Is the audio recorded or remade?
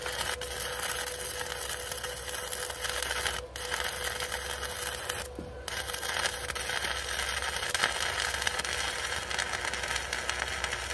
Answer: recorded